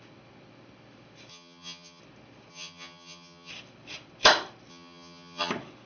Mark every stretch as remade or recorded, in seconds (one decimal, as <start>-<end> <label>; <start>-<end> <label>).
0.0-1.3 recorded; 1.3-2.0 remade; 2.0-2.5 recorded; 2.5-3.5 remade; 3.5-4.7 recorded; 4.7-5.5 remade; 5.5-5.9 recorded